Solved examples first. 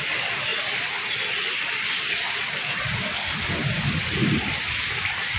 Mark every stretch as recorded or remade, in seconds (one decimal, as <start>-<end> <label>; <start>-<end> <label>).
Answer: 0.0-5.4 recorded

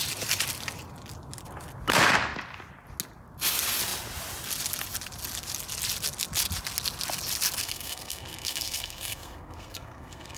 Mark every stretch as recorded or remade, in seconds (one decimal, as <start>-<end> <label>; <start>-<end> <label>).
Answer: 0.0-7.6 recorded; 7.6-10.4 remade

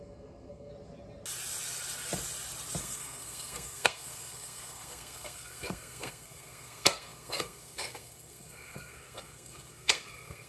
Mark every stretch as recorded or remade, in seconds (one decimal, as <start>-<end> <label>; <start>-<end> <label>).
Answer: 0.0-0.7 remade; 0.7-2.8 recorded; 2.8-10.5 remade

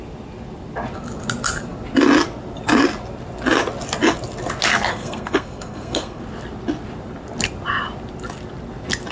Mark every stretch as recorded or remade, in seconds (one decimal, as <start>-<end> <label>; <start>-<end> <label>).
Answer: 0.0-4.9 recorded; 4.9-6.2 remade; 6.2-9.1 recorded

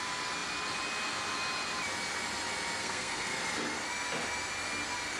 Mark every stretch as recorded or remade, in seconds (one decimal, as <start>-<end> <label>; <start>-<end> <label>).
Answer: 0.0-2.8 recorded; 2.8-3.4 remade; 3.4-5.2 recorded

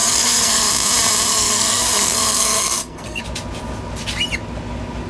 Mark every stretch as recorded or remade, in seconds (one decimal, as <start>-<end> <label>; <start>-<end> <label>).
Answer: 0.0-0.7 remade; 0.7-1.3 recorded; 1.3-3.2 remade; 3.2-5.1 recorded

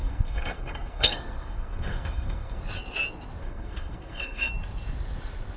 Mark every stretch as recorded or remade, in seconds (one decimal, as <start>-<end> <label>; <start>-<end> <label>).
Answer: 0.0-2.6 remade; 2.6-3.4 recorded; 3.4-4.5 remade; 4.5-5.6 recorded

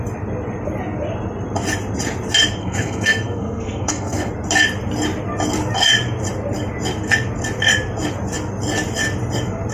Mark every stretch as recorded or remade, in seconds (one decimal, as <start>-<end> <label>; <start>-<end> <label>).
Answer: 0.0-2.6 recorded; 2.6-4.3 remade; 4.3-9.7 recorded